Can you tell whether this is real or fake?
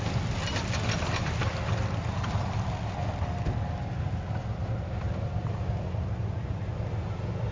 real